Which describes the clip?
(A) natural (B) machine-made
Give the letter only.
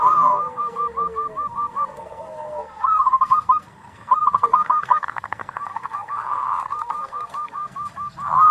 B